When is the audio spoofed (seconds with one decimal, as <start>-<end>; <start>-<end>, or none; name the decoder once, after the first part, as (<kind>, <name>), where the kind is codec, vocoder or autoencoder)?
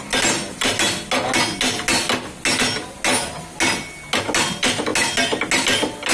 none